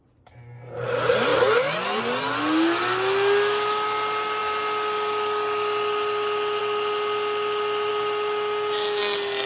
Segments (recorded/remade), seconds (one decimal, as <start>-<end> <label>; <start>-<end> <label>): 0.0-1.3 recorded; 1.3-2.0 remade; 2.0-9.5 recorded

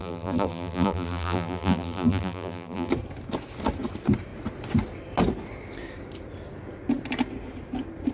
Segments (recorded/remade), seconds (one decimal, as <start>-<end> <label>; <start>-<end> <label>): 0.0-2.9 remade; 2.9-8.1 recorded

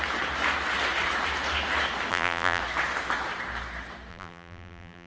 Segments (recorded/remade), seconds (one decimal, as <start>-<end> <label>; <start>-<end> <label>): 0.0-2.1 recorded; 2.1-2.6 remade; 2.6-4.1 recorded; 4.1-5.1 remade

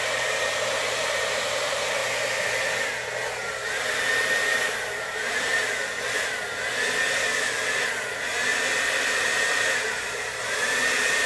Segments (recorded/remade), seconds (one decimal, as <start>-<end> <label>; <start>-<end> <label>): 0.0-2.0 remade; 2.0-5.0 recorded; 5.0-5.8 remade; 5.8-9.2 recorded; 9.2-11.3 remade

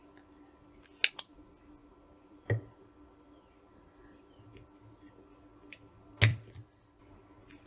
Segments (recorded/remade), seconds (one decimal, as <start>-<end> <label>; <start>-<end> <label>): 0.0-1.8 recorded; 1.8-4.4 remade; 4.4-6.3 recorded; 6.3-7.0 remade; 7.0-7.7 recorded

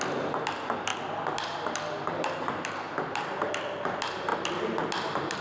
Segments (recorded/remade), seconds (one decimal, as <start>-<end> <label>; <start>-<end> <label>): 0.0-5.4 recorded